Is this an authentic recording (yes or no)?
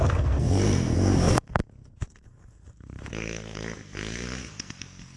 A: no